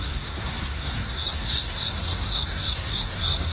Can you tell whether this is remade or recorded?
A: remade